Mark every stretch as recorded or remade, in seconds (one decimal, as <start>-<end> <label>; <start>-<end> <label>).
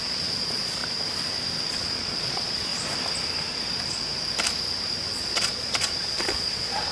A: 0.0-0.8 remade; 0.8-1.7 recorded; 1.7-2.7 remade; 2.7-5.1 recorded; 5.1-6.9 remade